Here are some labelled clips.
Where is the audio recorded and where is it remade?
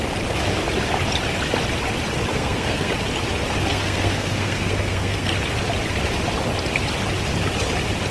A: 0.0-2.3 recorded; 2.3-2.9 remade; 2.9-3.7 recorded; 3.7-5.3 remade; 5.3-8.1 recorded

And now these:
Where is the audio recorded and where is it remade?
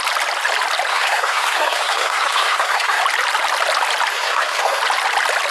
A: 0.0-0.9 recorded; 0.9-3.0 remade; 3.0-4.1 recorded; 4.1-4.8 remade; 4.8-5.5 recorded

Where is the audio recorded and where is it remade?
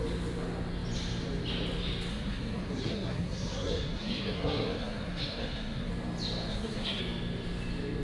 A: 0.0-2.1 recorded; 2.1-5.9 remade; 5.9-6.5 recorded; 6.5-7.0 remade; 7.0-8.0 recorded